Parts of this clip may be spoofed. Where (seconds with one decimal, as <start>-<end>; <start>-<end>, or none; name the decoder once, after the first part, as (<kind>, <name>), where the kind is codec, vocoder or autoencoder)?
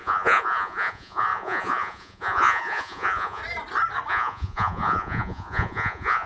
0.0-3.4 (vocoder, Vocos); 4.1-6.3